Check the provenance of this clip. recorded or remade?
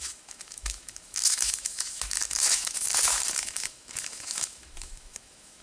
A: remade